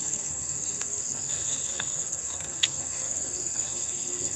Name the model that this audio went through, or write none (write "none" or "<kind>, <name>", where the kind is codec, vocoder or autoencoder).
codec, SNAC